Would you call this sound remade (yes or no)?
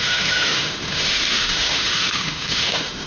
yes